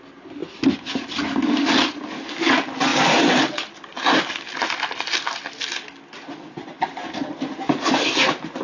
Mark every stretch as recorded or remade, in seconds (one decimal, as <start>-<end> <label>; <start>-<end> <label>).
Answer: 0.0-0.4 recorded; 0.4-1.7 remade; 1.7-2.9 recorded; 2.9-5.7 remade; 5.7-8.6 recorded

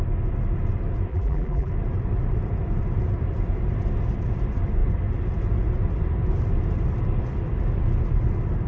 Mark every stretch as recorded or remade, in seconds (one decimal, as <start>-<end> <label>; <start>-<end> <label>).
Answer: 0.0-1.1 recorded; 1.1-1.7 remade; 1.7-8.7 recorded

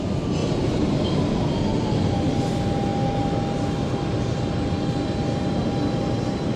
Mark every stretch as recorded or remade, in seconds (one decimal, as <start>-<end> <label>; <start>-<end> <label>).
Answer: 0.0-0.4 recorded; 0.4-1.8 remade; 1.8-6.6 recorded

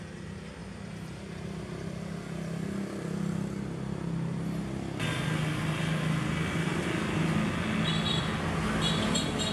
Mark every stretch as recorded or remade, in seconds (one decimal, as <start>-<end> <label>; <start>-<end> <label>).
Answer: 0.0-9.5 recorded

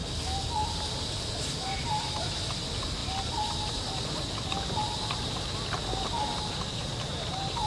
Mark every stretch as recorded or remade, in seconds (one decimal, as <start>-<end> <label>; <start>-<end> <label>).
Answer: 0.0-1.3 recorded; 1.3-3.0 remade; 3.0-6.5 recorded; 6.5-7.7 remade

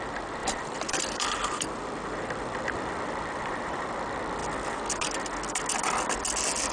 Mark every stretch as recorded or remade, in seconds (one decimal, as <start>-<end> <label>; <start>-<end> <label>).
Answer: 0.0-0.4 recorded; 0.4-3.9 remade; 3.9-6.7 recorded

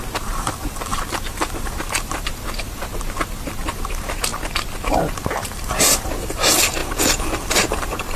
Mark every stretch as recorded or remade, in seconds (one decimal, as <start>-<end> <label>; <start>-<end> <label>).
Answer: 0.0-4.3 remade; 4.3-5.2 recorded; 5.2-6.8 remade; 6.8-7.5 recorded; 7.5-8.2 remade